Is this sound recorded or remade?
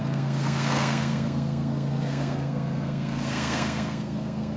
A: remade